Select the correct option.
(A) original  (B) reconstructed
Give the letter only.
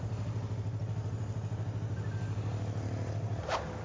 A